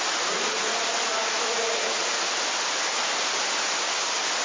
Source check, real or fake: real